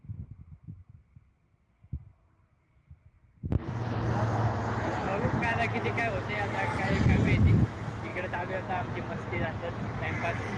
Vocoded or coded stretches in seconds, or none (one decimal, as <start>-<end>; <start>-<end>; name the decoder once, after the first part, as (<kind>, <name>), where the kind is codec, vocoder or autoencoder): 8.1-8.9 (vocoder, Vocos)